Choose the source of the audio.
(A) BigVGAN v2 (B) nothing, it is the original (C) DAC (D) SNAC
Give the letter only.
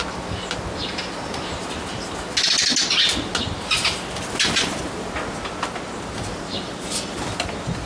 B